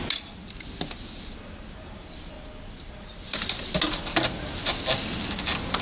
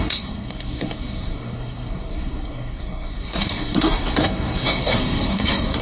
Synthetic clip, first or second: second